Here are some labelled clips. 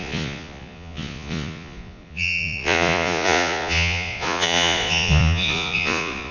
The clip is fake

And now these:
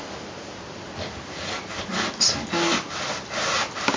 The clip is real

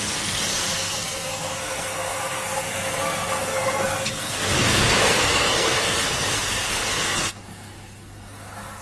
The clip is fake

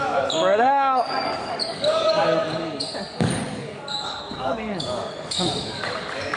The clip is fake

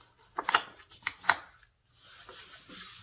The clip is real